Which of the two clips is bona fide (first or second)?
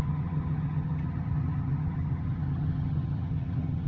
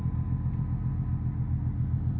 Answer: second